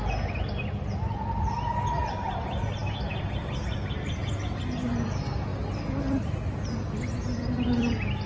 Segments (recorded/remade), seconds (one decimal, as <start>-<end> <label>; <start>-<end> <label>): 0.0-8.3 recorded